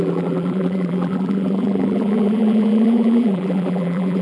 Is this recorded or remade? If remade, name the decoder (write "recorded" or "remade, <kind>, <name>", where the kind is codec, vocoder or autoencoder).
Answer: remade, vocoder, BigVGAN v2